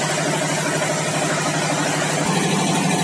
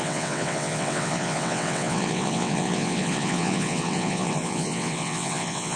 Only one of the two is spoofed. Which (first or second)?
second